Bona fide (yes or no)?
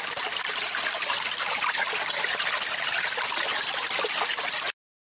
yes